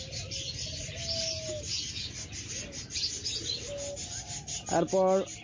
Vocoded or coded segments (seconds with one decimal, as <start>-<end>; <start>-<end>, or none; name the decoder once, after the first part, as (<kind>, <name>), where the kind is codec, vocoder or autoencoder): none